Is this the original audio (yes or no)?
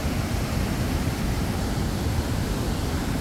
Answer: yes